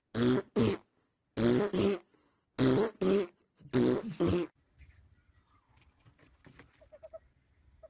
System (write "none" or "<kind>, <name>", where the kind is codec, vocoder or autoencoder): none